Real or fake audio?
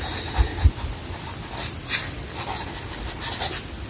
real